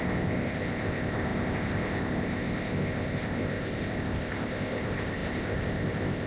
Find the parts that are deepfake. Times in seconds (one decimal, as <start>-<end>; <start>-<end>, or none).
0.0-6.3